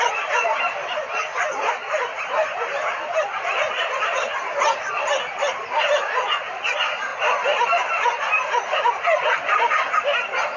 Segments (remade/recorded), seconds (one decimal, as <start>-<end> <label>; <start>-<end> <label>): 0.0-10.6 recorded